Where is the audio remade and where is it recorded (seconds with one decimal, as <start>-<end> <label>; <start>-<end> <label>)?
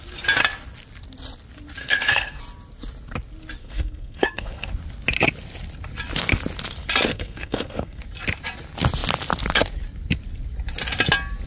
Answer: 0.0-1.8 recorded; 1.8-2.4 remade; 2.4-3.6 recorded; 3.6-4.7 remade; 4.7-7.1 recorded; 7.1-8.0 remade; 8.0-11.5 recorded